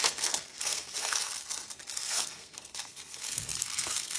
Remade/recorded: remade